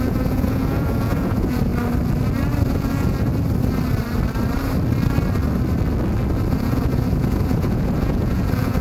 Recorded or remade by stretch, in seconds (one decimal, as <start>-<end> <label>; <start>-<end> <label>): 0.0-1.7 remade; 1.7-2.7 recorded; 2.7-3.3 remade; 3.3-6.5 recorded; 6.5-8.8 remade